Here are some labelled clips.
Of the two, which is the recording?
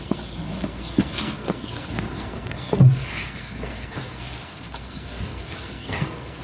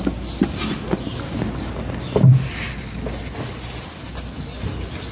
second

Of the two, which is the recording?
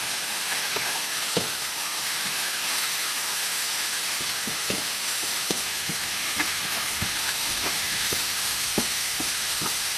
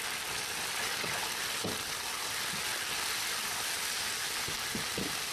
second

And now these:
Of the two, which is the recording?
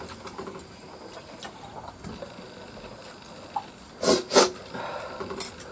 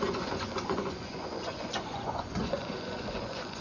first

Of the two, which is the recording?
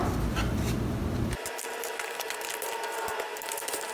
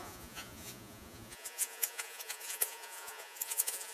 first